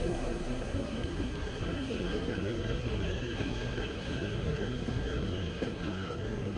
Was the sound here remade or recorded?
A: remade